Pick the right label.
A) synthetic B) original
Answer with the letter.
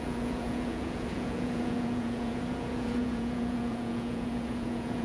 A